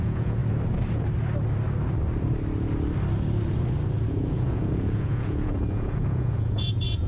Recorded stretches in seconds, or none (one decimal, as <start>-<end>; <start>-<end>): 0.4-4.1